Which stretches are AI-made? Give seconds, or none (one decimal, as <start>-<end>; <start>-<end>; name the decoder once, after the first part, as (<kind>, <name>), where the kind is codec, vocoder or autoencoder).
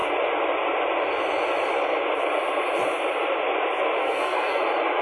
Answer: 4.0-4.6 (codec, SNAC)